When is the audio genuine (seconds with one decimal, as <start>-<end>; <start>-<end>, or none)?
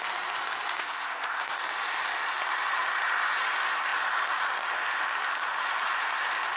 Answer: 0.0-0.8; 1.4-6.6